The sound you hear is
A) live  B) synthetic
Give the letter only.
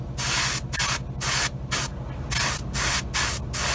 A